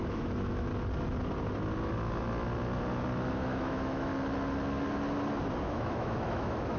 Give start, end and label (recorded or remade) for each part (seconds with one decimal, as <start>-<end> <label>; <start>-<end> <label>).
0.0-0.7 remade; 0.7-3.3 recorded; 3.3-4.1 remade; 4.1-5.6 recorded; 5.6-6.8 remade